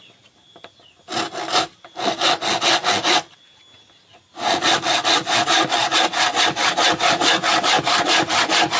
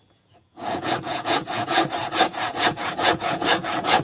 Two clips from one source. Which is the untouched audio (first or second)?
first